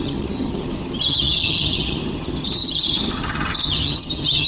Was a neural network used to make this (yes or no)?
yes